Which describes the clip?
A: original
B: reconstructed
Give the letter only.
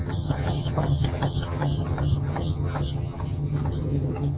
B